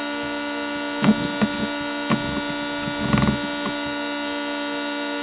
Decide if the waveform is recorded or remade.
recorded